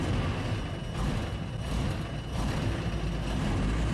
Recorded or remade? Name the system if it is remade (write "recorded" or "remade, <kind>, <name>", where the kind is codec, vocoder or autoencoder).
recorded